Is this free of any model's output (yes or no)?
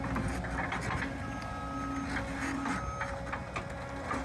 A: yes